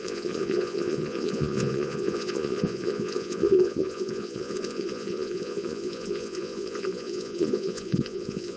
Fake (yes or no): yes